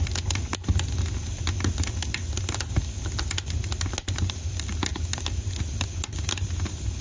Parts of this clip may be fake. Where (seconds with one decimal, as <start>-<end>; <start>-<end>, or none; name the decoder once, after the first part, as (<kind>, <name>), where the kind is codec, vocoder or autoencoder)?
none